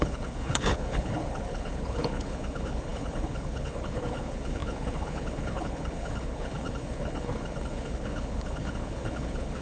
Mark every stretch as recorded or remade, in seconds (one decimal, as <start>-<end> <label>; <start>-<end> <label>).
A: 0.0-9.6 remade